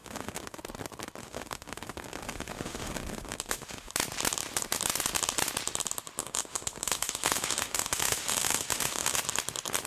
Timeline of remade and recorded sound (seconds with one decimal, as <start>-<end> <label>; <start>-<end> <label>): 0.0-0.6 remade; 0.6-1.2 recorded; 1.2-3.9 remade; 3.9-6.2 recorded; 6.2-9.2 remade; 9.2-9.9 recorded